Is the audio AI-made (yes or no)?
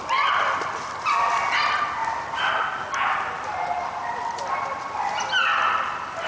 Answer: no